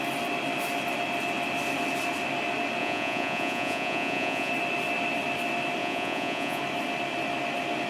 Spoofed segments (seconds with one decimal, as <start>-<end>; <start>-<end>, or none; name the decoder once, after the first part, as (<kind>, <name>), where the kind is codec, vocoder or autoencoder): 2.8-4.5 (vocoder, Vocos); 5.8-6.6